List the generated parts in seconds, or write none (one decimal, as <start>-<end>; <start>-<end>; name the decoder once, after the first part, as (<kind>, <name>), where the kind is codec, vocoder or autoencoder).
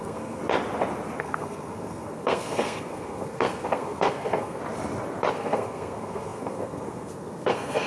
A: 0.0-0.4 (codec, SNAC); 1.2-4.6; 5.3-7.9